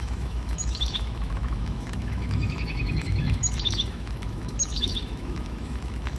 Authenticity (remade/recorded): remade